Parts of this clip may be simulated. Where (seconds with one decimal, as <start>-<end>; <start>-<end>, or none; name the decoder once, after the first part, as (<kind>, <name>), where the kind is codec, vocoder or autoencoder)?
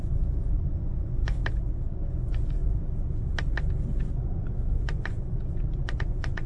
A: 0.0-1.4 (vocoder, Vocos); 2.1-2.6; 4.1-6.5